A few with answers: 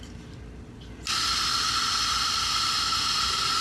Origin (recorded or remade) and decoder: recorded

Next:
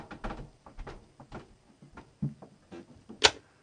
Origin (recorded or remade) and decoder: recorded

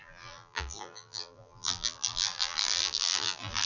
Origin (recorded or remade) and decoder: remade, vocoder, BigVGAN v2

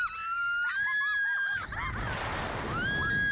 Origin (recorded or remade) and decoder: recorded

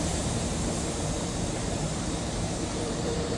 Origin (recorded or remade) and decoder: remade, vocoder, BigVGAN v2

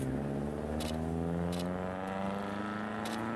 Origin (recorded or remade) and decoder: recorded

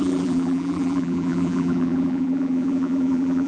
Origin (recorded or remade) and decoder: remade, vocoder, BigVGAN v2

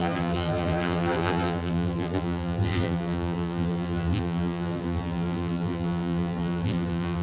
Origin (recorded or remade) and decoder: remade, vocoder, BigVGAN v2